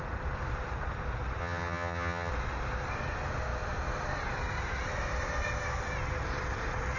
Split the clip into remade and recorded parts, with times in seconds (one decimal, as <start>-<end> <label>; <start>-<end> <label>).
0.0-1.4 recorded; 1.4-2.3 remade; 2.3-7.0 recorded